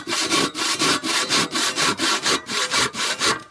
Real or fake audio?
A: fake